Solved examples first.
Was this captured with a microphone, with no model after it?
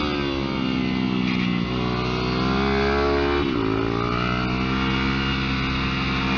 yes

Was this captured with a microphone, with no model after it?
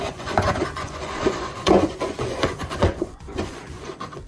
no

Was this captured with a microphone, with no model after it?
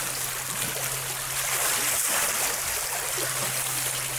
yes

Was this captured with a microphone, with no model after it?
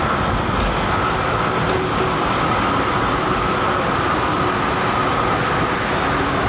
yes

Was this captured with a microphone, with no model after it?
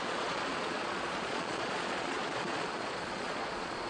no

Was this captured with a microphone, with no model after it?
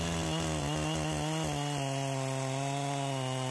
yes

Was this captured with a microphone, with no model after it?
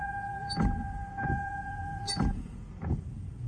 no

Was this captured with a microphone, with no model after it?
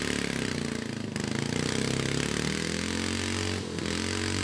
yes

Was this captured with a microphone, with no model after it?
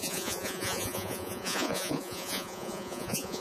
no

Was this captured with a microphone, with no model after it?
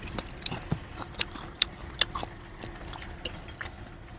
yes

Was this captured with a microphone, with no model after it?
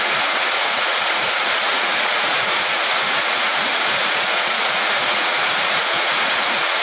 no